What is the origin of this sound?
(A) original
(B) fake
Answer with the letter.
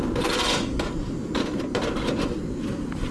A